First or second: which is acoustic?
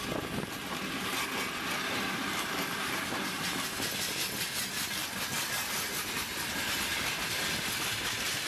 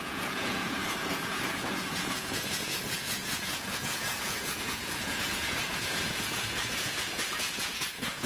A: first